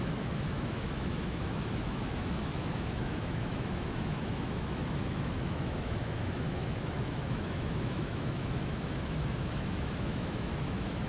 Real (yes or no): no